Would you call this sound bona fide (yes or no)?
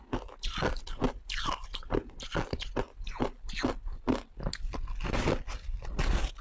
yes